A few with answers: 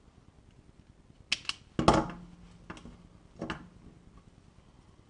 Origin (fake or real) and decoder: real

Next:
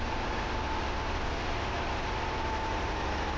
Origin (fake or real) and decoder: real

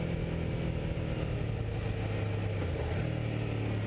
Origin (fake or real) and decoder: real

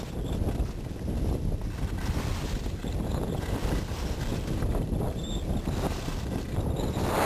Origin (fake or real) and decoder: real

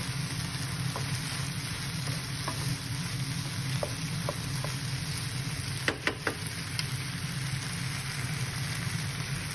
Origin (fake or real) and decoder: real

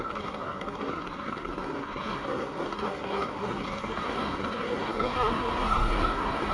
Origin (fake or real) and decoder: fake, codec, SNAC